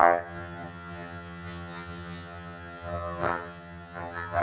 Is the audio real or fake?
fake